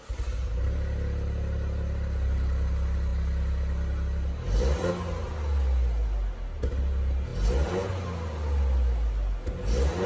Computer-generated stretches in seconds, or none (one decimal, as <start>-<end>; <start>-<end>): none